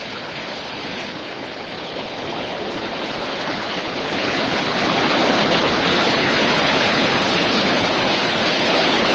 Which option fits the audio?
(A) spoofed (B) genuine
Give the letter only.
A